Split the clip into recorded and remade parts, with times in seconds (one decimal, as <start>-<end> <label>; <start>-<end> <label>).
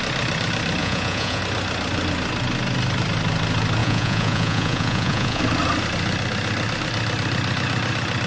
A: 0.0-0.8 recorded; 0.8-1.4 remade; 1.4-3.8 recorded; 3.8-5.4 remade; 5.4-8.3 recorded